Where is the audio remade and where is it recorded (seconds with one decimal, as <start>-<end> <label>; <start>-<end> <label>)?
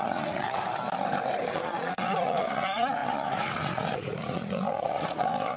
0.0-0.6 remade; 0.6-1.5 recorded; 1.5-5.6 remade